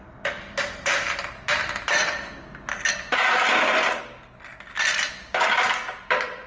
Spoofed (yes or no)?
no